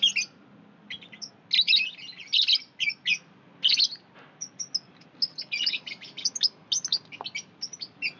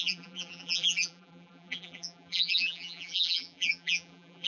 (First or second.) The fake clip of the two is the second